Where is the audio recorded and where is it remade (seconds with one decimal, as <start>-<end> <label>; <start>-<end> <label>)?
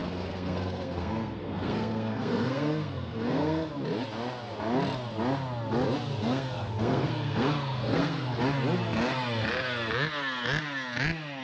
0.0-3.7 remade; 3.7-6.2 recorded; 6.2-8.4 remade; 8.4-11.4 recorded